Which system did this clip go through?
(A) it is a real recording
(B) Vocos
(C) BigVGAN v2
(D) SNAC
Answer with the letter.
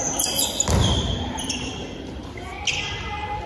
A